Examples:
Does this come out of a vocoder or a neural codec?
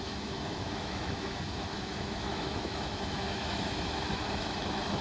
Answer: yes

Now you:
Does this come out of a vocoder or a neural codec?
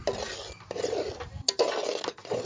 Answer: no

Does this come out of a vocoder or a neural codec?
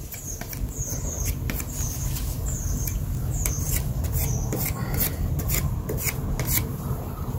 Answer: no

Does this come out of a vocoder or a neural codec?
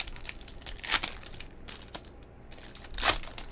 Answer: no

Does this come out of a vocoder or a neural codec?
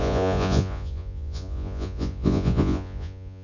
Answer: yes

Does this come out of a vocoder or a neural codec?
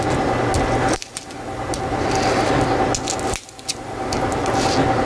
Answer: no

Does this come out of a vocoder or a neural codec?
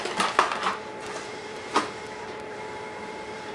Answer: yes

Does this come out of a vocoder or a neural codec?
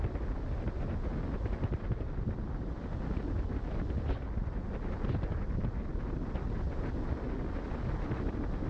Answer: no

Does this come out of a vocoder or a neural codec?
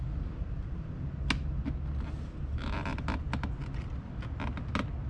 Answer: no